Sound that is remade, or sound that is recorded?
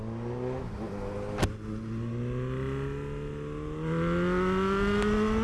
recorded